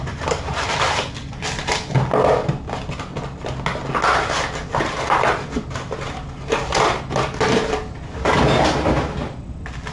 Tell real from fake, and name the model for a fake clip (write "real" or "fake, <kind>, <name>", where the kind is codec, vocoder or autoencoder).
real